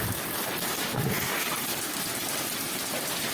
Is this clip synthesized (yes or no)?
no